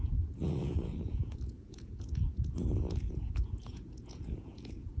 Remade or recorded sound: remade